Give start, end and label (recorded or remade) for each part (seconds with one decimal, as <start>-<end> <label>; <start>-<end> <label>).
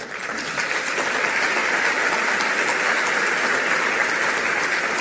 0.0-5.0 recorded